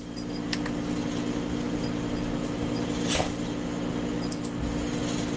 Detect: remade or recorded recorded